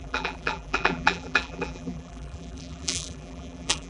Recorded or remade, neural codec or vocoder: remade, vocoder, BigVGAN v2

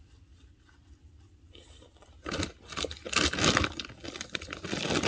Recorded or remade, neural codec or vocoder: recorded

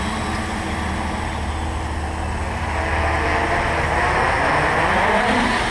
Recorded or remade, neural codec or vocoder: recorded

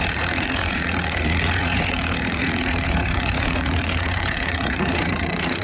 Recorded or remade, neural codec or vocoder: remade, vocoder, Vocos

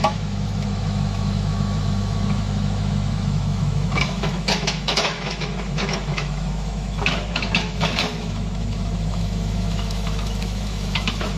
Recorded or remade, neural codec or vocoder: remade, autoencoder, DAC-VAE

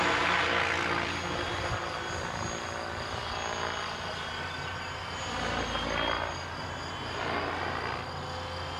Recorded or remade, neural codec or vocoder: recorded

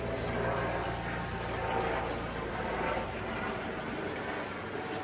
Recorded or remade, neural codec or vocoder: recorded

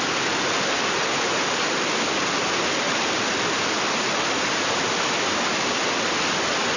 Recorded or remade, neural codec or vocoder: remade, vocoder, BigVGAN v2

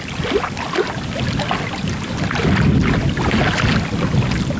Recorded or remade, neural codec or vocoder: recorded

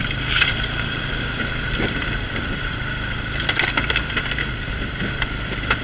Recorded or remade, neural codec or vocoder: remade, vocoder, BigVGAN v2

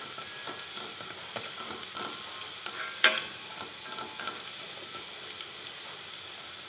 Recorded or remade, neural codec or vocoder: recorded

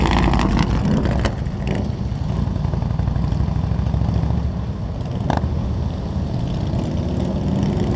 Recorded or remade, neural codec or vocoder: recorded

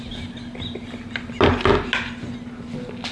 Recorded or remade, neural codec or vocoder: recorded